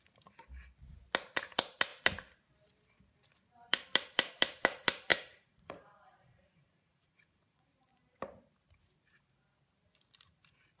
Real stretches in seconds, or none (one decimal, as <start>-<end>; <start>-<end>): 0.0-5.1; 7.7-10.8